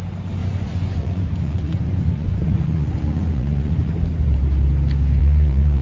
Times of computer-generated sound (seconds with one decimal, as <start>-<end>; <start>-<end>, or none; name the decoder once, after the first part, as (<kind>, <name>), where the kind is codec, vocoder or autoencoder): 0.4-3.9 (vocoder, Vocos); 5.2-5.8